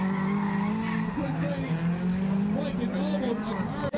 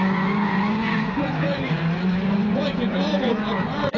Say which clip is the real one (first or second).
first